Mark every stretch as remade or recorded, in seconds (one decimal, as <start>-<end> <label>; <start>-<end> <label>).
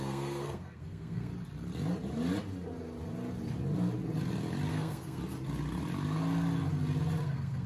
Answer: 0.0-1.3 remade; 1.3-4.7 recorded; 4.7-5.2 remade; 5.2-7.2 recorded; 7.2-7.7 remade